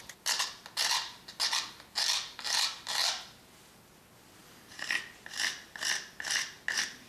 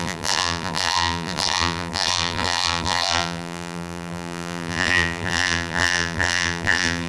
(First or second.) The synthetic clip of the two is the second